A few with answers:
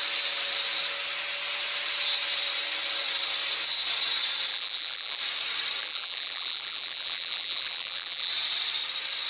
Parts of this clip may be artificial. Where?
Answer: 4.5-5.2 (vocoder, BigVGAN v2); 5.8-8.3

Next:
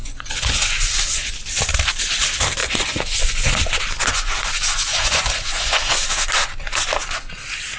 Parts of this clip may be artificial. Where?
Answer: 0.0-1.3 (vocoder, Vocos); 2.6-3.6; 4.1-6.3

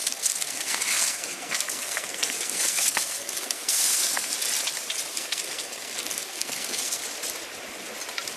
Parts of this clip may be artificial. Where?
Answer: 0.0-4.3 (codec, SNAC); 5.1-7.0